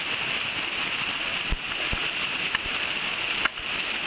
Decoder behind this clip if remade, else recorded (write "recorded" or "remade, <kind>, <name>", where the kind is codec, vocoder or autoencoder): recorded